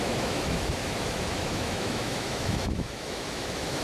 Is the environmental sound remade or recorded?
remade